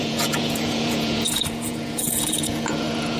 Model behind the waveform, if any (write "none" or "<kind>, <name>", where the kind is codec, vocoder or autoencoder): vocoder, Vocos